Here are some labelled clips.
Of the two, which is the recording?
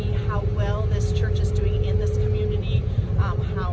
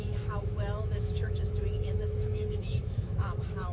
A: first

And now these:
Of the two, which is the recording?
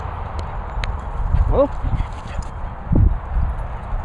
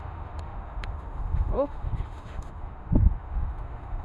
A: first